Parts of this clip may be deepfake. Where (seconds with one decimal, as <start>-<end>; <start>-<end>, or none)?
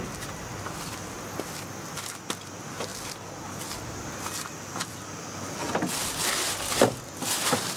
none